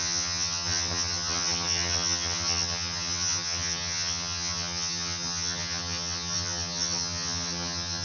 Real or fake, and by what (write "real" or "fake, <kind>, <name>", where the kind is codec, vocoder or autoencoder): fake, vocoder, HiFi-GAN